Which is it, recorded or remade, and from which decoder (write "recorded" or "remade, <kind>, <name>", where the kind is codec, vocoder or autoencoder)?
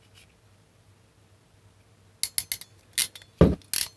recorded